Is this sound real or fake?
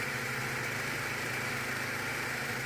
fake